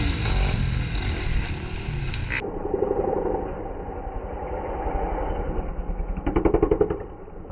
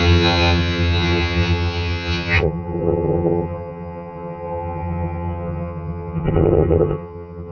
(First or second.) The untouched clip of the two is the first